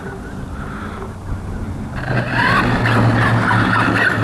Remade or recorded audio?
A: recorded